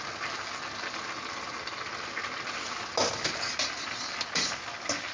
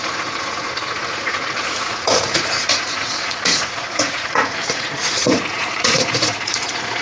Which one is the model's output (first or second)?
second